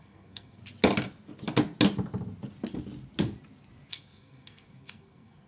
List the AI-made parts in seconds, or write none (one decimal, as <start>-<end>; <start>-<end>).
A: 0.0-0.6; 3.9-5.5

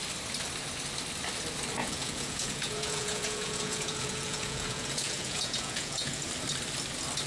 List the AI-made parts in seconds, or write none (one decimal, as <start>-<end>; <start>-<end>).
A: 1.8-6.2

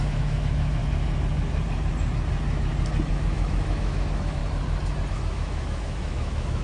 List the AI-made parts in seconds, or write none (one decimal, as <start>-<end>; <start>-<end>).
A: 0.0-0.8; 3.1-4.4; 5.1-6.6

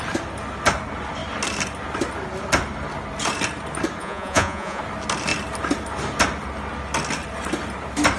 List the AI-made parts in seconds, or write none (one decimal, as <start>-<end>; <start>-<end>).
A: 4.0-4.8